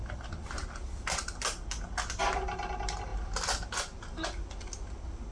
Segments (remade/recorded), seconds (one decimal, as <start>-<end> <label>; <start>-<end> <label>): 0.0-5.3 recorded

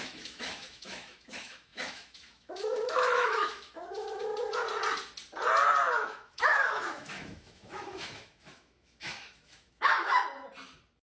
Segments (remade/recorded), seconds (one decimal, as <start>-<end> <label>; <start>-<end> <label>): 0.0-4.3 remade; 4.3-5.9 recorded; 5.9-10.2 remade; 10.2-11.2 recorded

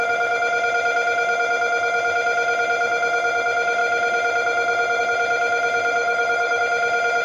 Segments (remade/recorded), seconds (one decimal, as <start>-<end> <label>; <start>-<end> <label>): 0.0-6.0 recorded; 6.0-6.6 remade; 6.6-7.2 recorded

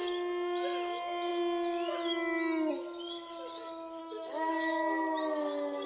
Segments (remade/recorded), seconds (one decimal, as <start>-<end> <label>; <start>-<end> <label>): 0.0-4.0 recorded; 4.0-4.5 remade; 4.5-5.9 recorded

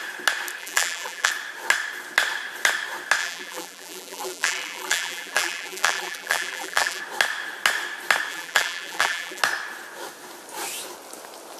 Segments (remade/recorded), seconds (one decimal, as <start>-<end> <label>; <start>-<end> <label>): 0.0-0.6 recorded; 0.6-1.3 remade; 1.3-3.2 recorded; 3.2-7.0 remade; 7.0-8.3 recorded; 8.3-9.4 remade; 9.4-11.6 recorded